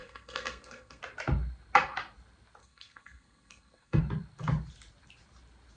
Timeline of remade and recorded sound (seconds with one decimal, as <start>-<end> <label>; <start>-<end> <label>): 0.0-1.0 remade; 1.0-2.6 recorded; 2.6-4.0 remade; 4.0-5.8 recorded

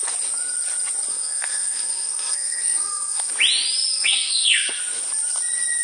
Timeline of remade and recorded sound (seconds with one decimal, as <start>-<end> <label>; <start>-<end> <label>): 0.0-1.1 recorded; 1.1-3.3 remade; 3.3-3.9 recorded; 3.9-4.8 remade; 4.8-5.8 recorded

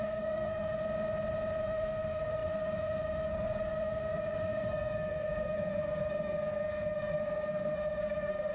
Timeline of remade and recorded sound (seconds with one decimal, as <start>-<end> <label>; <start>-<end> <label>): 0.0-0.8 remade; 0.8-1.6 recorded; 1.6-8.5 remade

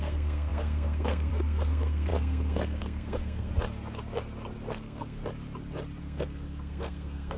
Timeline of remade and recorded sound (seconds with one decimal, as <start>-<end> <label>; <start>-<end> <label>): 0.0-3.5 remade; 3.5-4.7 recorded; 4.7-5.2 remade; 5.2-6.0 recorded; 6.0-7.4 remade

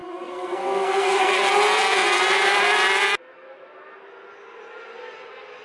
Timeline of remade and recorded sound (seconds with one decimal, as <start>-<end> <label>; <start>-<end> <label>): 0.0-1.5 remade; 1.5-5.6 recorded

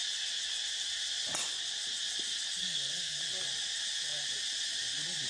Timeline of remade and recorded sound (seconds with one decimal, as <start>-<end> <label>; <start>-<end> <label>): 0.0-2.6 recorded; 2.6-3.2 remade; 3.2-5.3 recorded

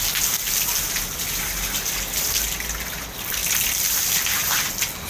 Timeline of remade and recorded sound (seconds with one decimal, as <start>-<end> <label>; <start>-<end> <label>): 0.0-5.1 recorded

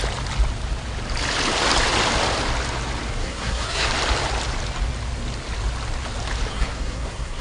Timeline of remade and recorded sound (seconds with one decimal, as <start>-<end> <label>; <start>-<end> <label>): 0.0-3.2 recorded; 3.2-3.9 remade; 3.9-6.5 recorded; 6.5-7.4 remade